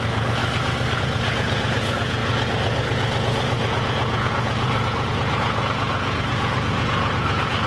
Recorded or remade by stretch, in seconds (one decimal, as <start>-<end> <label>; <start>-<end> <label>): 0.0-0.4 remade; 0.4-1.0 recorded; 1.0-7.7 remade

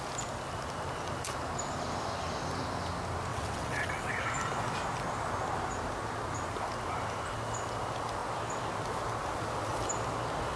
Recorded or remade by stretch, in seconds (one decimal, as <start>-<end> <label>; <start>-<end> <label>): 0.0-3.3 recorded; 3.3-4.1 remade; 4.1-10.6 recorded